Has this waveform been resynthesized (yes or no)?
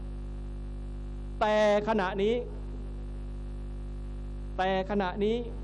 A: no